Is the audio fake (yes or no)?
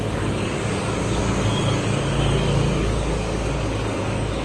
yes